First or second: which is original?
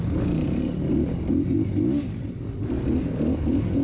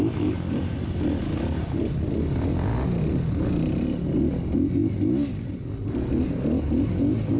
second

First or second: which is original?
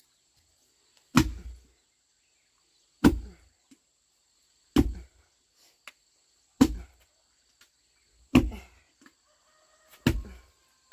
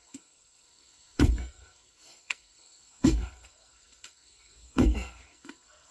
first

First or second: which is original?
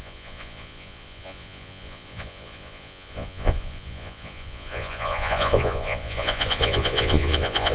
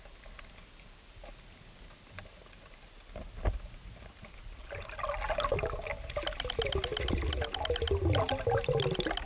second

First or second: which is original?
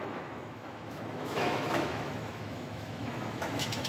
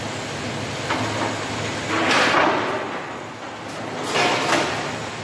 second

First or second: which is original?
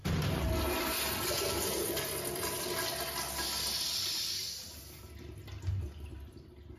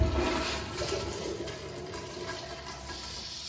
first